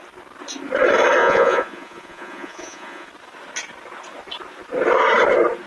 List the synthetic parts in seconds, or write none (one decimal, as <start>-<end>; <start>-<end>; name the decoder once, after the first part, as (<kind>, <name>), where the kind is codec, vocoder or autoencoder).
1.2-3.1 (vocoder, Vocos)